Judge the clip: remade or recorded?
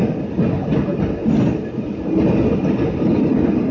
recorded